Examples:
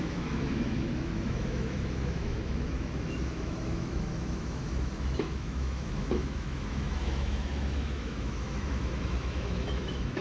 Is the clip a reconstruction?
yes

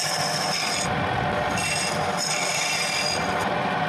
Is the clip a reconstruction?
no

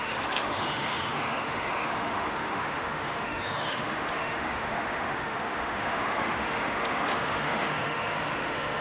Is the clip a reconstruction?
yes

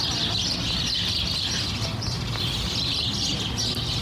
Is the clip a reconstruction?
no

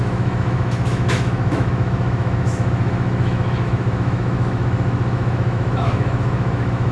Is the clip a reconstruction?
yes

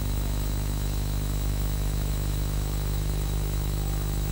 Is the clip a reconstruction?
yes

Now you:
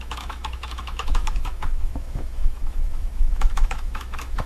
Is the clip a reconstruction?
yes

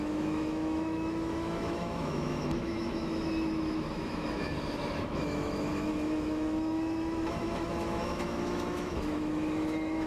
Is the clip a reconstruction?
yes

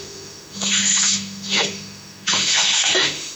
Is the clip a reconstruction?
yes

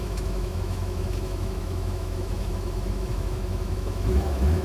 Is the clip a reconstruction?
yes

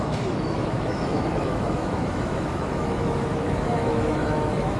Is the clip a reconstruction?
yes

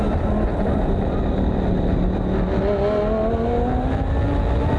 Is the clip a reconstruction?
no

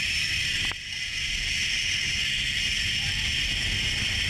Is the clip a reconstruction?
no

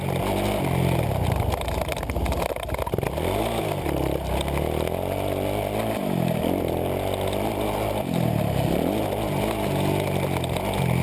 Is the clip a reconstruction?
no